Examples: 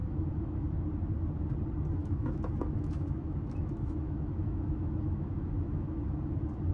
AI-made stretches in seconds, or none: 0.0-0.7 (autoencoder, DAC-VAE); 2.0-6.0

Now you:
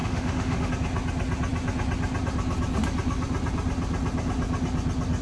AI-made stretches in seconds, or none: 0.0-0.7 (autoencoder, DAC-VAE)

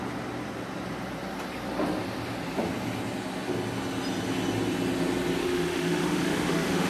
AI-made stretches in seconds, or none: 5.4-6.9 (autoencoder, DAC-VAE)

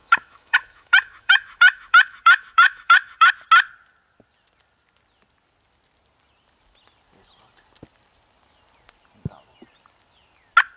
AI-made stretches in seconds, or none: 0.0-3.3 (autoencoder, DAC-VAE)

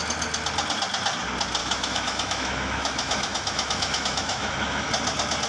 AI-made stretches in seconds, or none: 1.6-4.9 (autoencoder, DAC-VAE)

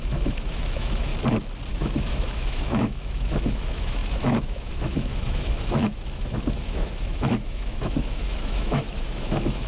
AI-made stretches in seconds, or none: 0.0-1.1 (autoencoder, DAC-VAE); 1.7-9.7